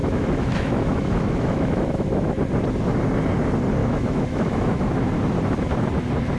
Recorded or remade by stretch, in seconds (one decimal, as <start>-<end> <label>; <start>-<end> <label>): 0.0-2.4 remade; 2.4-3.8 recorded; 3.8-5.0 remade; 5.0-6.4 recorded